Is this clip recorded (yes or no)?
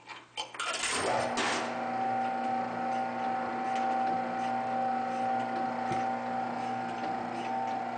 yes